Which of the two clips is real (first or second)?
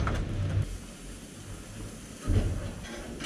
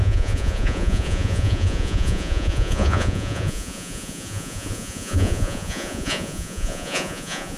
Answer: first